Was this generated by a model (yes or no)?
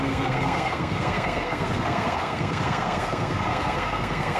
yes